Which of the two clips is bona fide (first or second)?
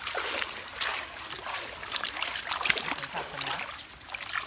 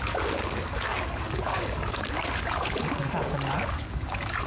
first